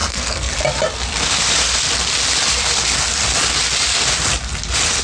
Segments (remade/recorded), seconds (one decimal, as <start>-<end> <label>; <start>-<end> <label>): 0.0-0.5 remade; 0.5-5.0 recorded

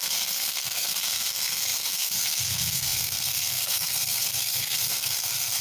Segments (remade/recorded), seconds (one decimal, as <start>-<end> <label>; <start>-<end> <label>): 0.0-5.6 remade

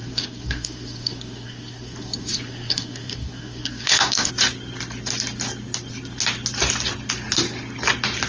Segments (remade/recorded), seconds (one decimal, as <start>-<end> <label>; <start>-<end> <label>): 0.0-4.3 remade; 4.3-8.3 recorded

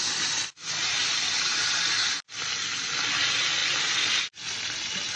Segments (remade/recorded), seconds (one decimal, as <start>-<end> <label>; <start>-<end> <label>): 0.0-5.2 recorded

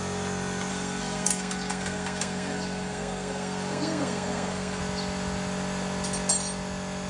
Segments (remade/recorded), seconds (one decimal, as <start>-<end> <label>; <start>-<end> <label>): 0.0-0.7 recorded; 0.7-4.8 remade; 4.8-7.1 recorded

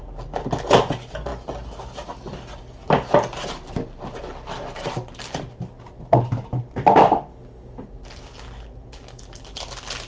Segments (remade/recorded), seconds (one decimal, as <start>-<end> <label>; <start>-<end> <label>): 0.0-10.1 recorded